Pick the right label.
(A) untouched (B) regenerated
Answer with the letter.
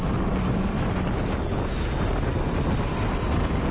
A